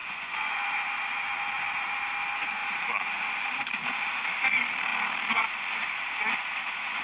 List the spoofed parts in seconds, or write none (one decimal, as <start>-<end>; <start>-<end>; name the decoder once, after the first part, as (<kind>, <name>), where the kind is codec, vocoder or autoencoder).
0.0-0.6 (vocoder, Vocos)